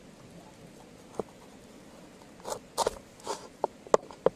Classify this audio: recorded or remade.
recorded